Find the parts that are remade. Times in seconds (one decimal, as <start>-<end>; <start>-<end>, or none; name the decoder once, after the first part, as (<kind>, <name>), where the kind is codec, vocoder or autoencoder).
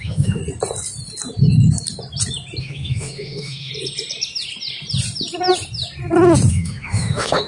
0.0-0.4 (autoencoder, DAC-VAE); 2.6-3.7; 6.5-7.5